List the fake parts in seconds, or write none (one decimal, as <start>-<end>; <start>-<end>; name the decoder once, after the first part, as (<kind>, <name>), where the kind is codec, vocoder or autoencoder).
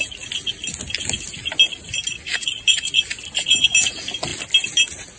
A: none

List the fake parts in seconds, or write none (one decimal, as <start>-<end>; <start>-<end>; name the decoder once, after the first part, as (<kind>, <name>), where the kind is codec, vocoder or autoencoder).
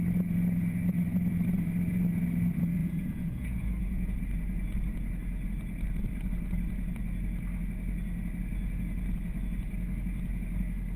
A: 2.8-4.2 (vocoder, Vocos)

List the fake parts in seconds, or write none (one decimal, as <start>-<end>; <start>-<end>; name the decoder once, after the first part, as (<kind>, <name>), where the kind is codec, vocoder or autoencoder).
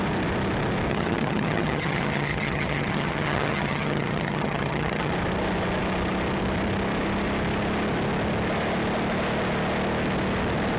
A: 0.9-5.1 (vocoder, HiFi-GAN)